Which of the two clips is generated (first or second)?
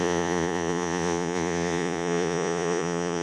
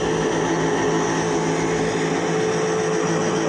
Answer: first